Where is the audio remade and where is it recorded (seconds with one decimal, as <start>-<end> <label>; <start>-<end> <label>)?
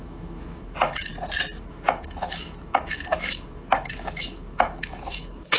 0.0-1.1 remade; 1.1-1.6 recorded; 1.6-5.6 remade